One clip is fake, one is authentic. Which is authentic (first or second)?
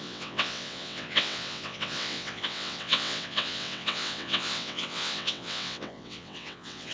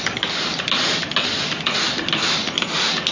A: second